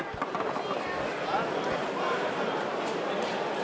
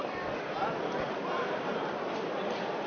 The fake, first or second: second